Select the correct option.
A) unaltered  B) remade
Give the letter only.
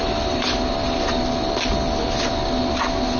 A